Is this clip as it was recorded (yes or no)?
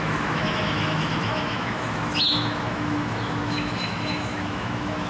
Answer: no